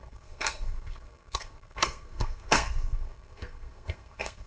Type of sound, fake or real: fake